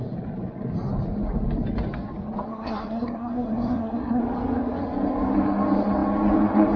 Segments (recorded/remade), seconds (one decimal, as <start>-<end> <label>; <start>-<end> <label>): 0.0-2.5 recorded; 2.5-4.2 remade; 4.2-6.8 recorded

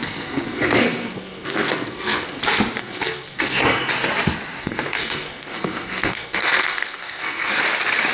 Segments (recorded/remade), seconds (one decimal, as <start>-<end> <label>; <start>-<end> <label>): 0.0-2.4 remade; 2.4-2.8 recorded; 2.8-3.9 remade; 3.9-4.6 recorded; 4.6-7.6 remade; 7.6-8.1 recorded

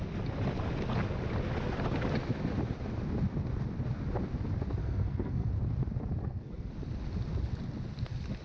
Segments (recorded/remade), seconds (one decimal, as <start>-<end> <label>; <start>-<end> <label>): 0.0-4.8 recorded; 4.8-5.5 remade; 5.5-6.2 recorded; 6.2-6.7 remade; 6.7-8.4 recorded

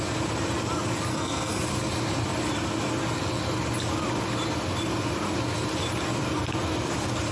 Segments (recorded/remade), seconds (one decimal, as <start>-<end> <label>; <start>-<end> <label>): 0.0-1.1 recorded; 1.1-1.6 remade; 1.6-7.3 recorded

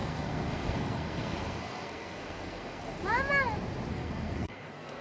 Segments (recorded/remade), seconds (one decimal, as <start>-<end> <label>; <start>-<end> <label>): 0.0-3.0 remade; 3.0-3.9 recorded; 3.9-5.0 remade

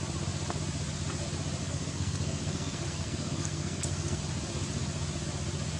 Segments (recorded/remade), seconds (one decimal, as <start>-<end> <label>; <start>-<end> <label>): 0.0-1.6 recorded; 1.6-4.2 remade; 4.2-5.8 recorded

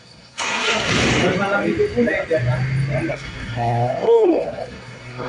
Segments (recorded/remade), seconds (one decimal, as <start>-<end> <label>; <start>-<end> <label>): 0.0-0.9 remade; 0.9-3.1 recorded; 3.1-5.3 remade

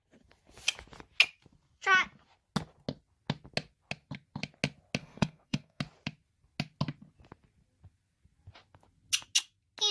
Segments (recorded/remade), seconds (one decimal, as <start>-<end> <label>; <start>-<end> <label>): 0.0-5.0 recorded; 5.0-5.8 remade; 5.8-9.9 recorded